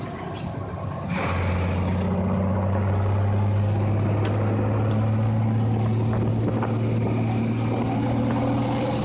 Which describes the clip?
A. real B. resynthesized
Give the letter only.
A